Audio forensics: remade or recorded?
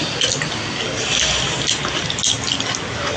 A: recorded